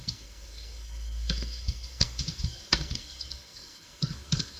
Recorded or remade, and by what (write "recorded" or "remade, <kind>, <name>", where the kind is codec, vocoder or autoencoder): remade, codec, SNAC